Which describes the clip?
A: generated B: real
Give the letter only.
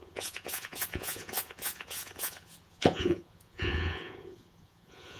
A